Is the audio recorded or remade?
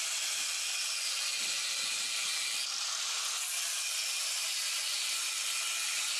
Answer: recorded